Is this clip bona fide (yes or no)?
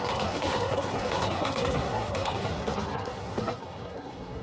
no